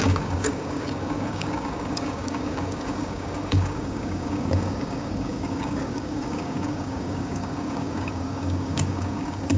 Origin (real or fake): fake